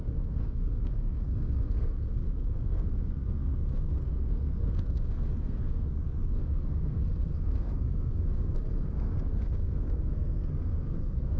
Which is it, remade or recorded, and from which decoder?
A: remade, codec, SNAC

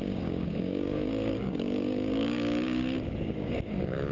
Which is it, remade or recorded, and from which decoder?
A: remade, codec, DAC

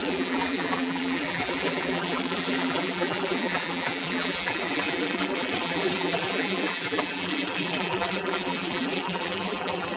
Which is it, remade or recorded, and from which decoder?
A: remade, vocoder, BigVGAN v2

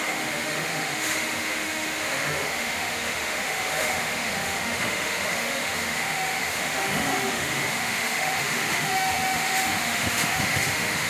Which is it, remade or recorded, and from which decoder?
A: remade, autoencoder, DAC-VAE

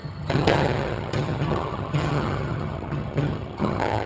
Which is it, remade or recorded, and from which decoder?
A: remade, vocoder, HiFi-GAN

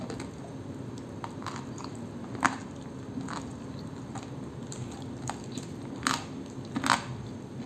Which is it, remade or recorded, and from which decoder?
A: recorded